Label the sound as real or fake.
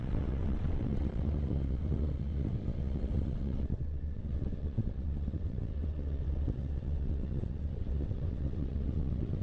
fake